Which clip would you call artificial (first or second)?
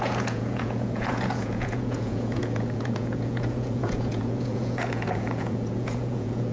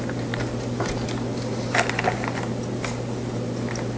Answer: first